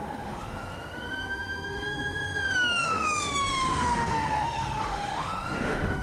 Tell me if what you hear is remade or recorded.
remade